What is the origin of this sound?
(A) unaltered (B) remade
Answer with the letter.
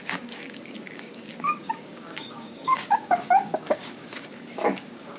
B